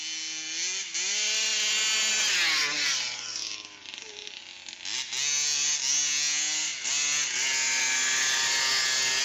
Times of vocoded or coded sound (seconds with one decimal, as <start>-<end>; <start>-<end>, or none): none